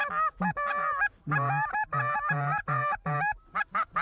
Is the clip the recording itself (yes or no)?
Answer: yes